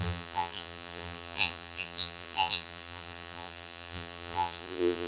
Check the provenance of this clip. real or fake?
fake